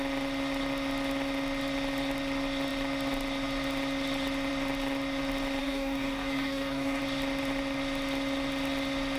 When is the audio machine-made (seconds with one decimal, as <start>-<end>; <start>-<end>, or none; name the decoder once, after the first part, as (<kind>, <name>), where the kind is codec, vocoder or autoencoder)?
5.6-7.0 (codec, DAC)